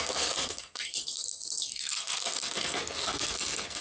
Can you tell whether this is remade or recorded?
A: remade